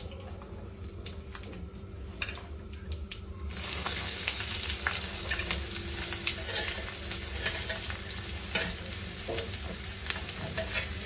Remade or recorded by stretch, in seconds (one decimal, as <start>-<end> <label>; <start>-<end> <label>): 0.0-3.7 recorded; 3.7-4.4 remade; 4.4-11.1 recorded